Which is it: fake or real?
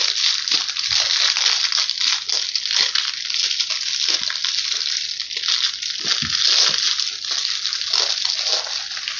real